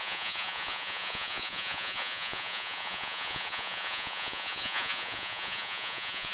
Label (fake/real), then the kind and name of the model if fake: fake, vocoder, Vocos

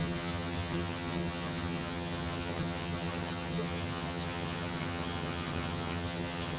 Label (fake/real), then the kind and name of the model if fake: fake, vocoder, HiFi-GAN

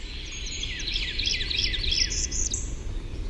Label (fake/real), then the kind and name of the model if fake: real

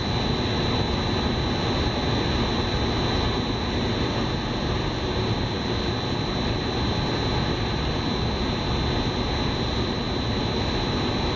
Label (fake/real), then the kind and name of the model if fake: real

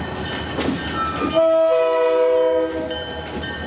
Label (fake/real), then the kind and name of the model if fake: real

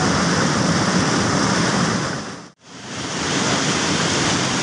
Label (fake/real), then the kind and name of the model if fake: real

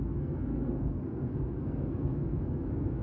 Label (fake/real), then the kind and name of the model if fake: fake, codec, SNAC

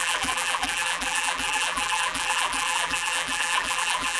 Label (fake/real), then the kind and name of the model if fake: fake, vocoder, BigVGAN v2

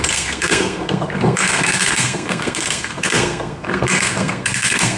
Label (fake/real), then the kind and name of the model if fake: fake, codec, SNAC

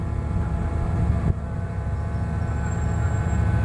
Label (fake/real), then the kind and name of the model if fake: real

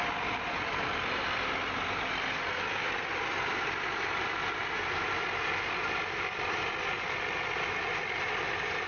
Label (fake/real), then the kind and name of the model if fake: real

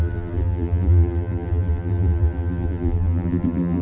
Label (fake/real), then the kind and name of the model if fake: fake, vocoder, BigVGAN v2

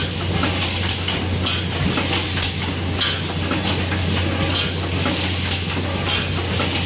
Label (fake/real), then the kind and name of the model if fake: real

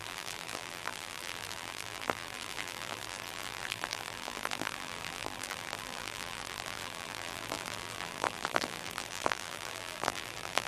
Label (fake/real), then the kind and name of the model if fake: fake, vocoder, BigVGAN v2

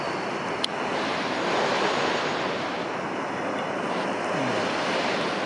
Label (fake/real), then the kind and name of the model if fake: real